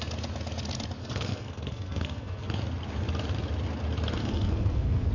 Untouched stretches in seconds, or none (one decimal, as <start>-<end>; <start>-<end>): 0.0-1.0; 2.6-4.2